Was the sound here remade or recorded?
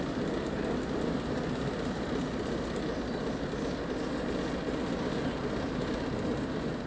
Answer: recorded